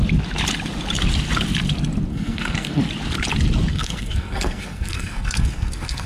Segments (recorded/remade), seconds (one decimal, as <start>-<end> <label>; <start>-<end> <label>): 0.0-2.1 recorded; 2.1-2.8 remade; 2.8-3.7 recorded; 3.7-6.1 remade